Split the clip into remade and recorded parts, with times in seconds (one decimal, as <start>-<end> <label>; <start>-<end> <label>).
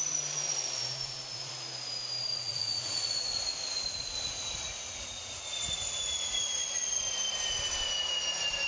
0.0-0.5 recorded; 0.5-1.5 remade; 1.5-2.3 recorded; 2.3-7.0 remade; 7.0-8.7 recorded